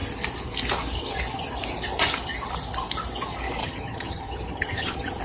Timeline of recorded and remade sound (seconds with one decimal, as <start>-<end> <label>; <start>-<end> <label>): 0.0-3.6 recorded; 3.6-5.2 remade